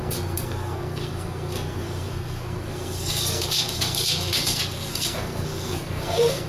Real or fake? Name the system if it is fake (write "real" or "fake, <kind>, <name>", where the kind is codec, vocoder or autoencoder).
fake, codec, SNAC